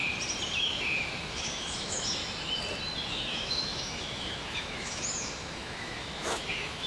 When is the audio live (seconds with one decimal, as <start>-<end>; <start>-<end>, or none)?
0.0-0.6; 2.2-3.1